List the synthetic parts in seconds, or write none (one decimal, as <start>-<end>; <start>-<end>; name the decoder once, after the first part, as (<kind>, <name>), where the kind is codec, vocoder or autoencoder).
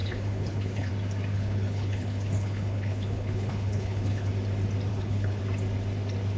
0.0-0.9 (codec, HILCodec); 1.3-4.3; 4.9-5.4